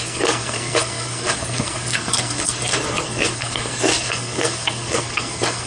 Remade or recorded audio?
remade